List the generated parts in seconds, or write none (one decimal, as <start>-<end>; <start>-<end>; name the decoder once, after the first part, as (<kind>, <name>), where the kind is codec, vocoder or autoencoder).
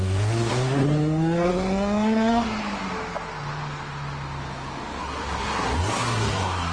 0.0-2.6 (codec, SNAC); 5.0-6.7